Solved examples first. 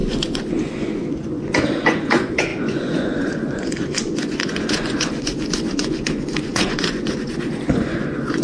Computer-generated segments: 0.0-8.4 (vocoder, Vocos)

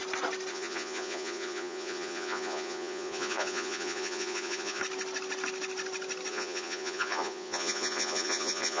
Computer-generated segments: 0.5-4.8 (vocoder, Vocos); 6.3-8.8

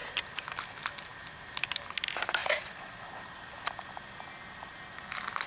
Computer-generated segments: none

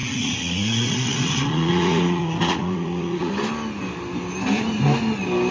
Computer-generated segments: 0.0-3.3 (vocoder, Vocos)

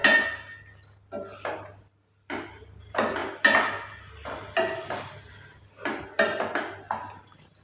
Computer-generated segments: none

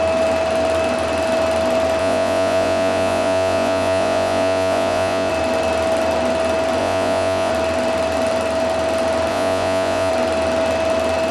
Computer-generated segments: 2.0-5.3 (vocoder, Vocos); 6.8-7.5; 9.3-10.1

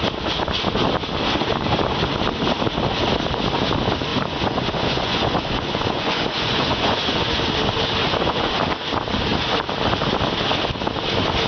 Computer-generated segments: 4.1-7.4 (vocoder, Vocos); 8.0-8.5

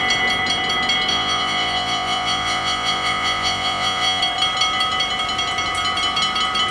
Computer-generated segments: 1.1-4.2 (vocoder, Vocos)